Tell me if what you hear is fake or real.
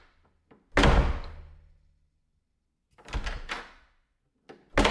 real